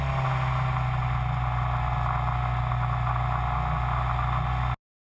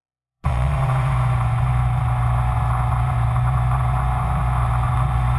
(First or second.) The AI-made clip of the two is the second